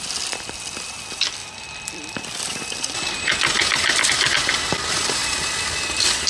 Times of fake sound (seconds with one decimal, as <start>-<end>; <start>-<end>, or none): 1.4-4.1; 5.2-6.3